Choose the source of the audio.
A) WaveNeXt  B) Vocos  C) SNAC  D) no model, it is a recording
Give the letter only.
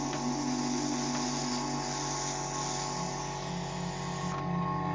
D